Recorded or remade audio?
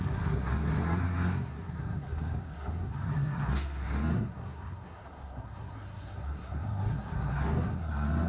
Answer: remade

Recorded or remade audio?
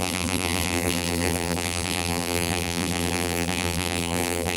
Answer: remade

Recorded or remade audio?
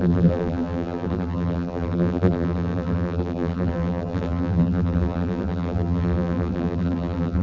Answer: remade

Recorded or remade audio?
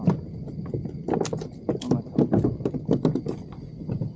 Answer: recorded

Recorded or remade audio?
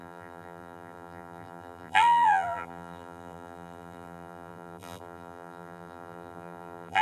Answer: remade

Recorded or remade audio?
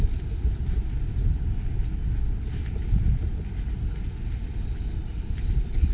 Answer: recorded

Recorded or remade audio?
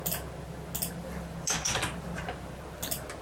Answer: recorded